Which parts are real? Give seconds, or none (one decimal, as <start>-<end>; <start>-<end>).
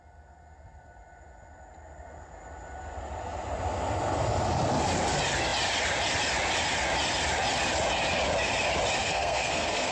0.0-9.0